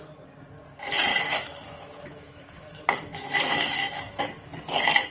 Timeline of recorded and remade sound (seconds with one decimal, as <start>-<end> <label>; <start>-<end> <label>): 0.0-1.1 recorded; 1.1-4.2 remade; 4.2-5.1 recorded